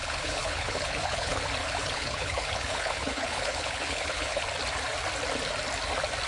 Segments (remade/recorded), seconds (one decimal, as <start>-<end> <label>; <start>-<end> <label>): 0.0-1.4 remade; 1.4-1.8 recorded; 1.8-4.4 remade; 4.4-6.3 recorded